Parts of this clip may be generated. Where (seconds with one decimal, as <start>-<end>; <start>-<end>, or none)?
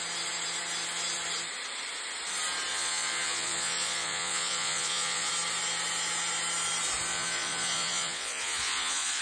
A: 2.7-5.3; 7.1-9.2